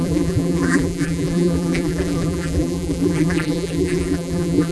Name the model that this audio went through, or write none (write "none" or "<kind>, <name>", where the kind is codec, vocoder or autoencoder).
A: vocoder, BigVGAN v2